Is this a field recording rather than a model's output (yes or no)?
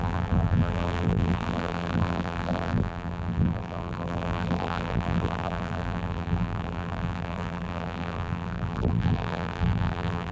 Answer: no